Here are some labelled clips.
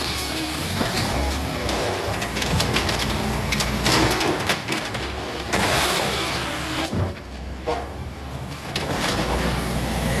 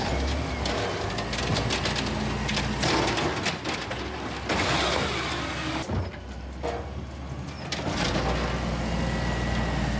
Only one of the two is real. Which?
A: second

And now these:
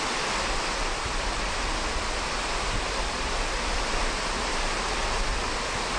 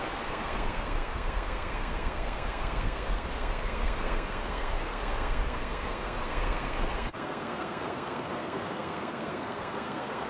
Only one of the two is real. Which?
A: first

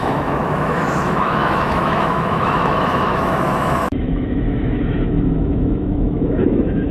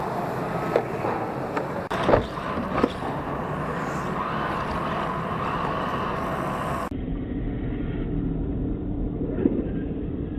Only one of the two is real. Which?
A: second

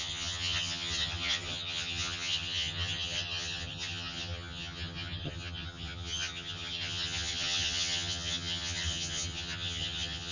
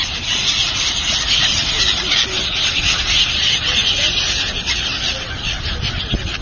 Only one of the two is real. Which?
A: second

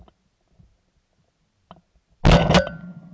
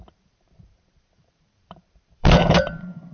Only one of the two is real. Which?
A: first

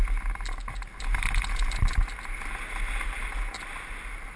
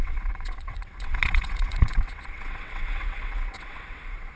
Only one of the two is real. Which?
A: first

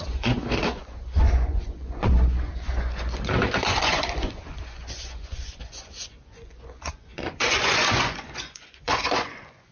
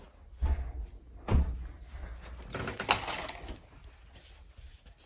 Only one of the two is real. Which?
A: second